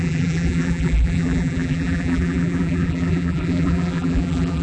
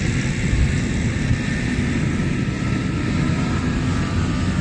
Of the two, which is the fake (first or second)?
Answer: first